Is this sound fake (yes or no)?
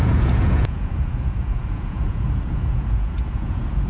yes